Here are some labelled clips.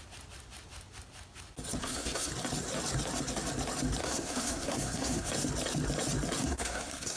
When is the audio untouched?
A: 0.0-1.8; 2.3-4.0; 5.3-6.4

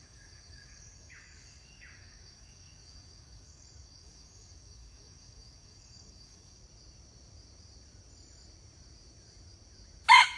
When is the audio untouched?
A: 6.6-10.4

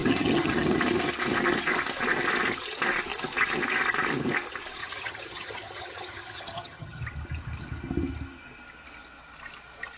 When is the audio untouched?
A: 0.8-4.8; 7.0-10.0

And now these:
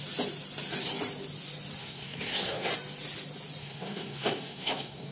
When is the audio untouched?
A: 0.0-1.8; 2.7-3.6